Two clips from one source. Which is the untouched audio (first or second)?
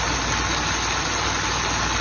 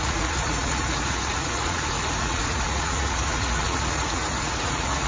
first